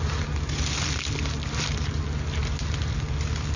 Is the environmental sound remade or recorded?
recorded